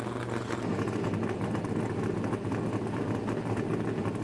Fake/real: real